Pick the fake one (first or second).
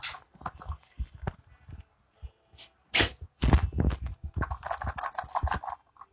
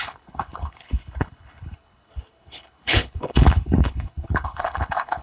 second